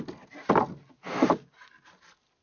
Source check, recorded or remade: recorded